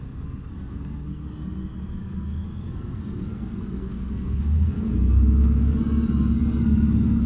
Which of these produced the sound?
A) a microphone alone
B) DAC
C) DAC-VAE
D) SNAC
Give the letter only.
D